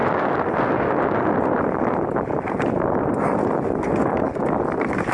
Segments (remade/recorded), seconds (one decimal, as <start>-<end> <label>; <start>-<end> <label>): 0.0-5.1 recorded